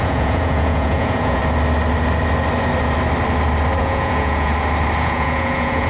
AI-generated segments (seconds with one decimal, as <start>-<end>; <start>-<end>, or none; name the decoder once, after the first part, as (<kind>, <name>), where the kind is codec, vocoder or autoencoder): 0.0-1.4 (vocoder, Vocos); 3.8-4.5; 5.0-5.9